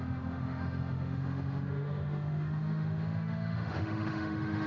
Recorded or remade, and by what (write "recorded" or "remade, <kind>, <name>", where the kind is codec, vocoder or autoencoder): remade, autoencoder, DAC-VAE